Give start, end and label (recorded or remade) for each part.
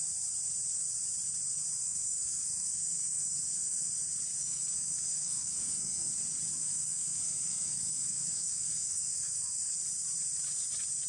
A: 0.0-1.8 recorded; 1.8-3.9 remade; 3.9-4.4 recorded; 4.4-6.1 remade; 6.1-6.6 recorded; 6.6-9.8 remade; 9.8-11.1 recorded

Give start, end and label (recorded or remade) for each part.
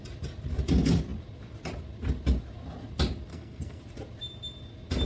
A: 0.0-3.3 recorded; 3.3-3.8 remade; 3.8-5.1 recorded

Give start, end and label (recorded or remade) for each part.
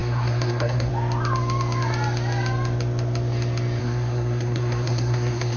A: 0.0-0.9 remade; 0.9-3.8 recorded; 3.8-5.6 remade